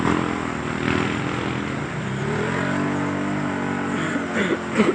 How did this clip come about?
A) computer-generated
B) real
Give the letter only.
B